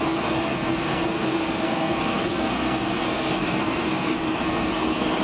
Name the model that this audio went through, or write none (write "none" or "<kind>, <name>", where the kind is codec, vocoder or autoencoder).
codec, SNAC